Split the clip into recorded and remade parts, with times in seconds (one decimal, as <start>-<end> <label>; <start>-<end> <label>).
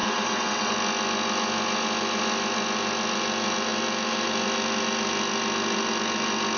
0.0-0.7 remade; 0.7-6.6 recorded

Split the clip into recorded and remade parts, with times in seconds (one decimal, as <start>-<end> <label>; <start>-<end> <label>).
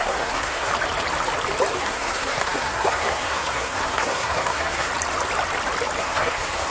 0.0-0.7 remade; 0.7-1.8 recorded; 1.8-4.9 remade; 4.9-6.0 recorded; 6.0-6.7 remade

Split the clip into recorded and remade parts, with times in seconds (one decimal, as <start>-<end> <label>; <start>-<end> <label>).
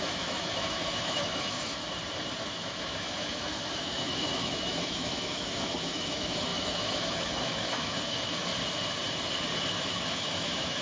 0.0-1.8 remade; 1.8-2.4 recorded; 2.4-8.5 remade; 8.5-9.7 recorded; 9.7-10.8 remade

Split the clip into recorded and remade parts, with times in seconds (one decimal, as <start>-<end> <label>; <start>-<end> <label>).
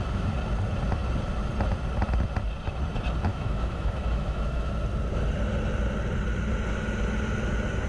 0.0-3.3 recorded; 3.3-4.7 remade; 4.7-7.9 recorded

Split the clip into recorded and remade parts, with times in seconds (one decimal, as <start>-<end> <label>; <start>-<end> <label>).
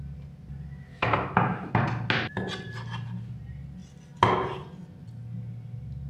0.0-0.9 recorded; 0.9-1.7 remade; 1.7-6.1 recorded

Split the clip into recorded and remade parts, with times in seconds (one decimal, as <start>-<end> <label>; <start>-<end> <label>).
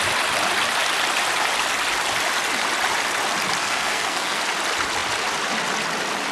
0.0-3.6 recorded; 3.6-4.4 remade; 4.4-6.3 recorded